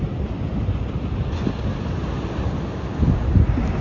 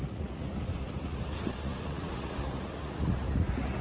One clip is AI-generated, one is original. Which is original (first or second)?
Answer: first